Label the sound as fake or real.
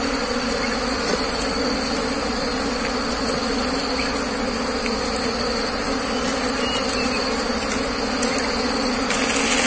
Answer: real